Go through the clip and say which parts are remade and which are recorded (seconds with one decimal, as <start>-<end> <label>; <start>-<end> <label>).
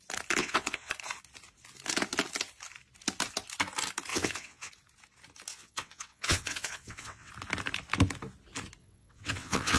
0.0-0.4 recorded; 0.4-0.9 remade; 0.9-4.1 recorded; 4.1-4.7 remade; 4.7-5.5 recorded; 5.5-7.3 remade; 7.3-8.8 recorded; 8.8-9.8 remade